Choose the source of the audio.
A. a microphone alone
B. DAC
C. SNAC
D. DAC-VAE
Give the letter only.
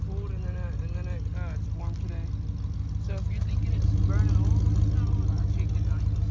A